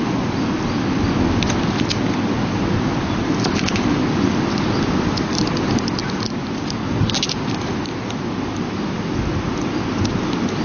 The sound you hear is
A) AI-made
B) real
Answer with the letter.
B